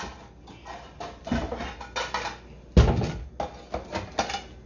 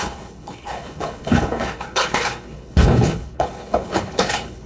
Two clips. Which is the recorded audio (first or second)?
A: first